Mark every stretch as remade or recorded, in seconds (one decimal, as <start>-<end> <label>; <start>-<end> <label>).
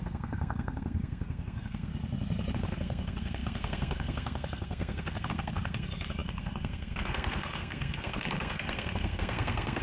0.0-1.9 remade; 1.9-2.5 recorded; 2.5-9.8 remade